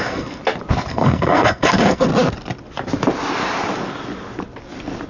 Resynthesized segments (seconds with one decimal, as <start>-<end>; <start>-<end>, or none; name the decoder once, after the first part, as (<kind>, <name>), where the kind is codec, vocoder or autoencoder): 0.0-0.4 (codec, SNAC); 0.9-2.1